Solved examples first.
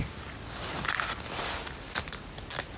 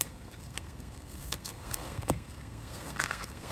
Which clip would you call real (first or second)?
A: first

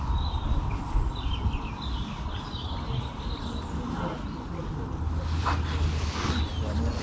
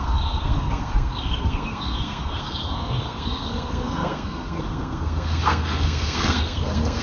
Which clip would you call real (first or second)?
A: first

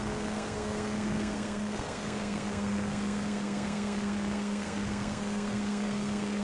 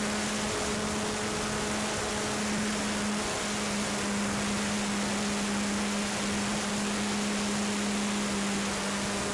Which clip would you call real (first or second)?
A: second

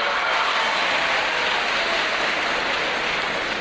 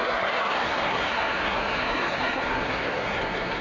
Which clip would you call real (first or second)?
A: first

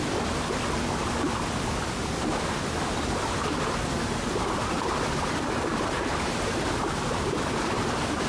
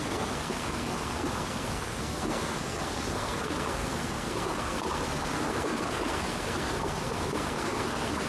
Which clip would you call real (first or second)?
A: first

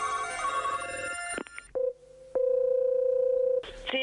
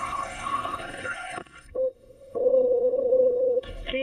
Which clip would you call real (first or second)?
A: first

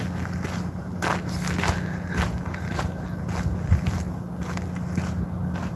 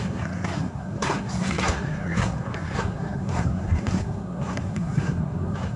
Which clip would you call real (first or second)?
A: first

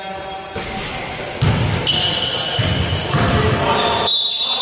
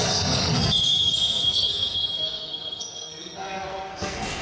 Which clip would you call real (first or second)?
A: first